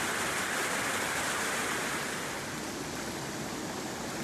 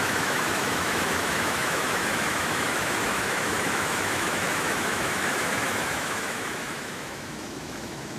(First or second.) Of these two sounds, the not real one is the second